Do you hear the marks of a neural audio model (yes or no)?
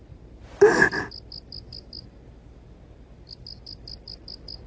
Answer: no